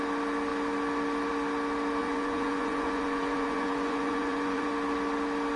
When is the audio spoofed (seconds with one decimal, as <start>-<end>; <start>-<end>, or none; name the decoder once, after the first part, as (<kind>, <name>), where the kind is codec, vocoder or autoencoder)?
2.0-4.7 (vocoder, Vocos)